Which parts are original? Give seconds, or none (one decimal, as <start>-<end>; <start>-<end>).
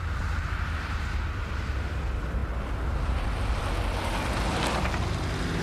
0.0-5.6